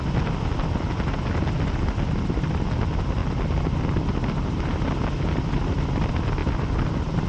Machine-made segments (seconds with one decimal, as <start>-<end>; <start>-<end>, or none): none